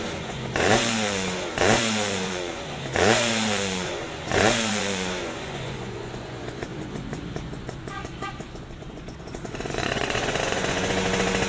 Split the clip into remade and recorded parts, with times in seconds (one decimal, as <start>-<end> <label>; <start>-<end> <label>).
0.0-11.5 remade